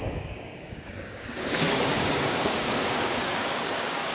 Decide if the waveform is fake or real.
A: fake